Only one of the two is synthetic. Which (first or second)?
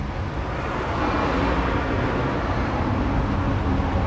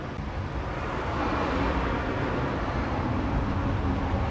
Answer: second